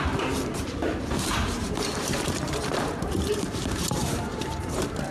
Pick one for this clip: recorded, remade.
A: remade